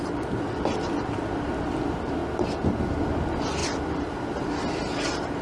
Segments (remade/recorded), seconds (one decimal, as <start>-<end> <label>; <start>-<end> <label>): 0.0-3.6 recorded; 3.6-4.6 remade; 4.6-5.4 recorded